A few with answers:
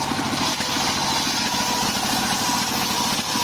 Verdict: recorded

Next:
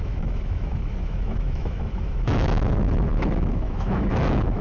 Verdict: remade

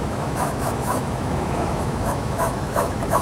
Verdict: remade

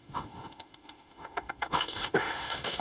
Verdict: remade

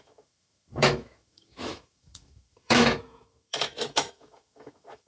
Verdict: remade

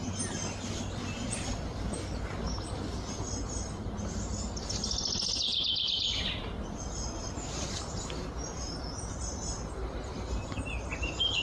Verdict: recorded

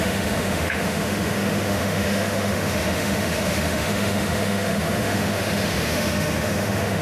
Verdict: remade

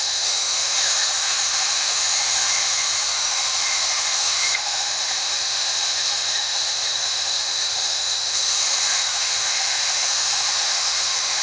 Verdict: remade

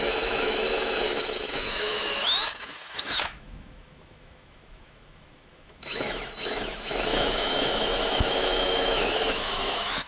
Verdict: remade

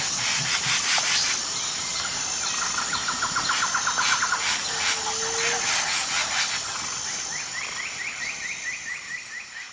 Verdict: recorded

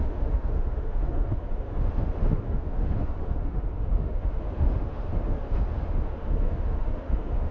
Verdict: remade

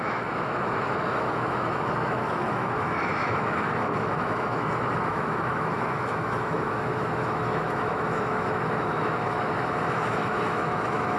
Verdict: remade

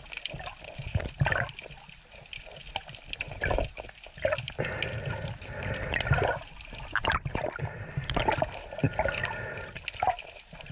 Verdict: recorded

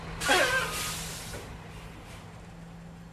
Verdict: recorded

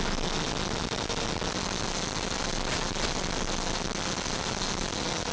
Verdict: recorded